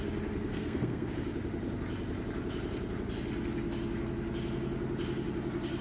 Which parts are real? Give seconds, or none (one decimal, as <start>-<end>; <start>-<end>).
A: 0.0-0.5; 1.1-5.8